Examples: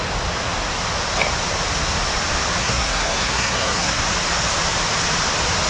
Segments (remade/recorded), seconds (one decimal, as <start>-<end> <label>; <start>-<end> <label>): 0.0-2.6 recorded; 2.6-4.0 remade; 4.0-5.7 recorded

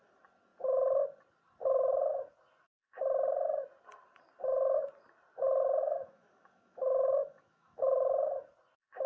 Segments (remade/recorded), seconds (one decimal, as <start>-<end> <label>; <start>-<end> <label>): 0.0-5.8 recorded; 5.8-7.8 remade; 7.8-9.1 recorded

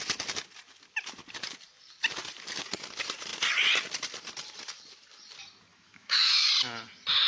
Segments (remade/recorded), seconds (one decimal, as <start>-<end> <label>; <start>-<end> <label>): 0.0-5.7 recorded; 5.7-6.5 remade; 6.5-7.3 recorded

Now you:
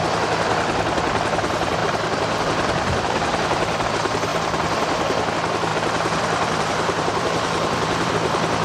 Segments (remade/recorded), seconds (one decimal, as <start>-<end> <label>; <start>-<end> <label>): 0.0-1.8 recorded; 1.8-3.9 remade; 3.9-4.3 recorded; 4.3-5.3 remade; 5.3-5.7 recorded; 5.7-8.1 remade; 8.1-8.6 recorded

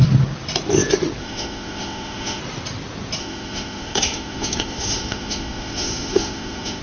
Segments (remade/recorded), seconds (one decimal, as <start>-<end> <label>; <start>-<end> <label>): 0.0-1.2 recorded; 1.2-2.4 remade; 2.4-3.2 recorded; 3.2-6.8 remade

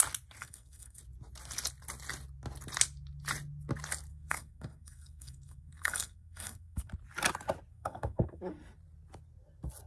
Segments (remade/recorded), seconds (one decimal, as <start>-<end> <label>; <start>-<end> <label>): 0.0-0.4 recorded; 0.4-1.0 remade; 1.0-4.1 recorded; 4.1-6.9 remade; 6.9-7.7 recorded; 7.7-8.4 remade; 8.4-9.9 recorded

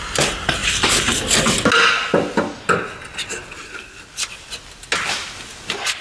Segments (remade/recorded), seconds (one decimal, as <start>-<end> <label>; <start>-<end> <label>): 0.0-6.0 recorded

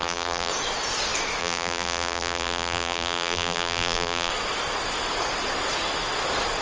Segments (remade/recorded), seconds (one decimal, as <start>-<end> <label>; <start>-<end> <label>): 0.0-0.5 remade; 0.5-1.4 recorded; 1.4-4.3 remade; 4.3-6.6 recorded